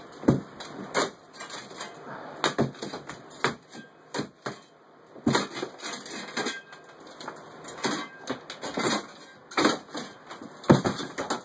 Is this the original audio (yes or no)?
yes